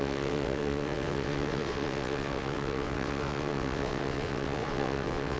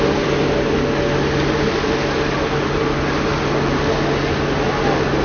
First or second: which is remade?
first